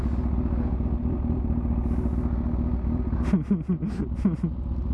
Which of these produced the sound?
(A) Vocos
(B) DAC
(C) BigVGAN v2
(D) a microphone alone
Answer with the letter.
D